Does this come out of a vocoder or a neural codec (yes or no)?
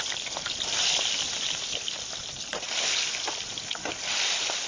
no